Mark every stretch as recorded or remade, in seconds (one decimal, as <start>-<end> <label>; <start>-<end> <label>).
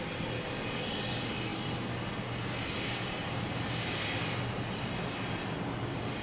0.0-6.2 recorded